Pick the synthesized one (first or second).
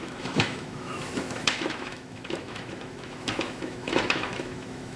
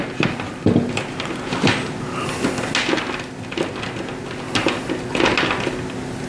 first